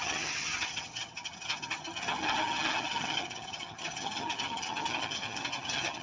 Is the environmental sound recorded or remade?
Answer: remade